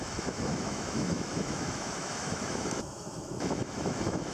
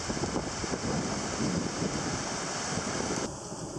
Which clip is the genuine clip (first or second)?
second